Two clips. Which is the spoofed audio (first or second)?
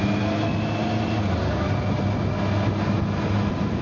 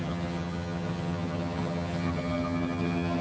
second